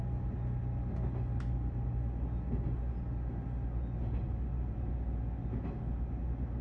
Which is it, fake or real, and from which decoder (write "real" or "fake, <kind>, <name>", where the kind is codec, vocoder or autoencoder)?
real